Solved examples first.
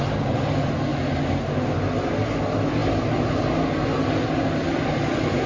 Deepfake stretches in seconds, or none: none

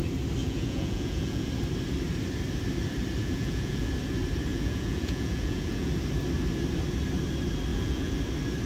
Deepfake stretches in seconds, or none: 0.4-1.5; 3.2-3.9; 4.5-5.9; 7.7-8.2

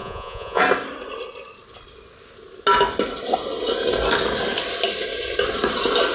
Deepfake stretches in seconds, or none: 0.0-0.6

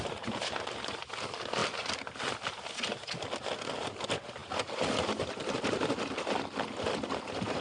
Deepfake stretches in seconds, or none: none

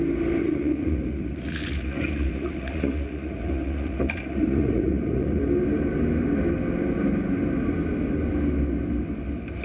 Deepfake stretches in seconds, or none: 0.4-5.4

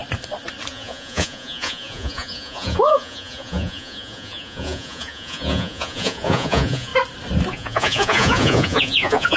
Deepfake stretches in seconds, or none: 0.7-6.9; 7.5-9.4

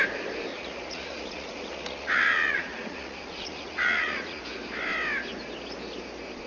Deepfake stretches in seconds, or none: 0.5-4.4